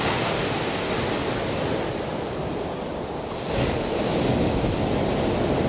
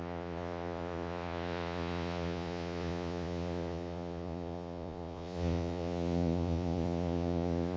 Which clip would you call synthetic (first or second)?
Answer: second